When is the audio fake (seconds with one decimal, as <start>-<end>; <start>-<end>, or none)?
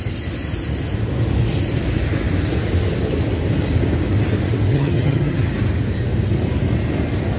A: 4.7-5.5